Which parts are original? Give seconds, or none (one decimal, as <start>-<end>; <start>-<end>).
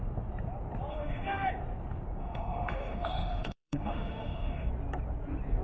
0.0-0.9; 1.5-2.2; 4.7-5.6